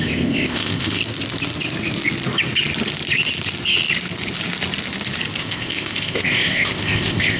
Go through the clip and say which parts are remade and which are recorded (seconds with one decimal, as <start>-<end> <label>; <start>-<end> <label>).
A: 0.0-1.0 remade; 1.0-5.4 recorded; 5.4-7.4 remade